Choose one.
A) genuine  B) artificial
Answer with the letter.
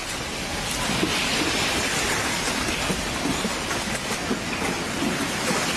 A